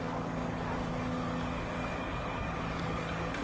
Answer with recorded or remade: remade